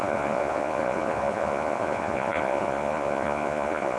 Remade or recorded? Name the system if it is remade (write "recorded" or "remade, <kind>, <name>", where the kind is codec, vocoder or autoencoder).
remade, vocoder, Vocos